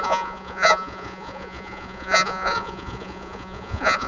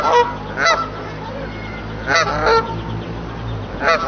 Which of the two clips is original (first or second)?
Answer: second